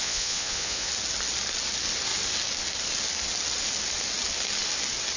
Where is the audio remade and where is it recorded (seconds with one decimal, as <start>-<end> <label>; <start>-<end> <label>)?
0.0-0.9 remade; 0.9-5.2 recorded